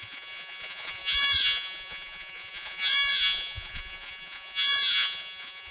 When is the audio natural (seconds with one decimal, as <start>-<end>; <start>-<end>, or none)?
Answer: none